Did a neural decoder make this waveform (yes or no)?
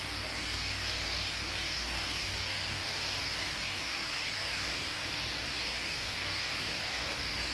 yes